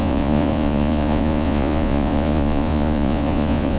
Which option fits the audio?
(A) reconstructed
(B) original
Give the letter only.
A